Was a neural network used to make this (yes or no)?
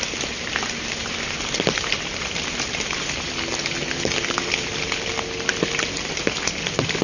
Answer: no